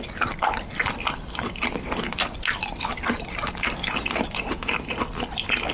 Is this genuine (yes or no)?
yes